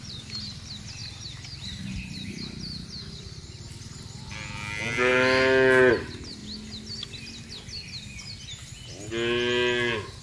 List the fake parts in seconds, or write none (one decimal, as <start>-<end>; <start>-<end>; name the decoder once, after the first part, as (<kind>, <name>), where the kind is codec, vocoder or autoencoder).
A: 1.0-4.2 (vocoder, BigVGAN v2)